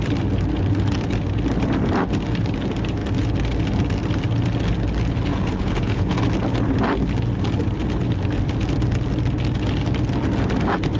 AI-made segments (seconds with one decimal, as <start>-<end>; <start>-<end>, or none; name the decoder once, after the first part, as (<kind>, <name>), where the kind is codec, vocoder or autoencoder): 5.3-6.2 (vocoder, Vocos)